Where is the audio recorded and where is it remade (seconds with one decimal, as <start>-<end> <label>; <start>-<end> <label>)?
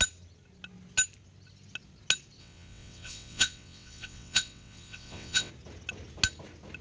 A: 0.0-2.4 recorded; 2.4-5.5 remade; 5.5-6.8 recorded